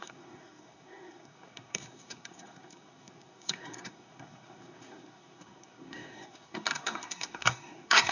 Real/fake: fake